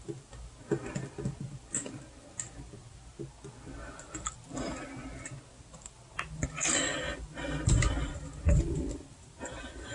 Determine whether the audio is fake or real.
real